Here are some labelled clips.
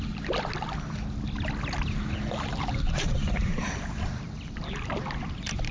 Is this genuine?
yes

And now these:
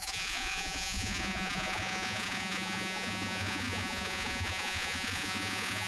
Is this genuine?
no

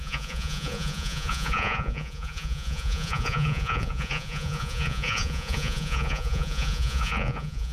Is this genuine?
no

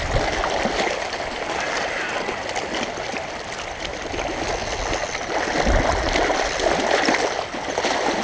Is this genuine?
yes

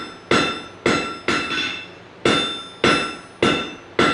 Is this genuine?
yes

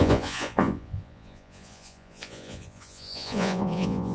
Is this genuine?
no